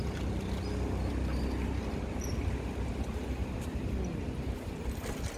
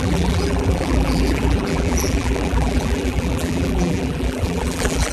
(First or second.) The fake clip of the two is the second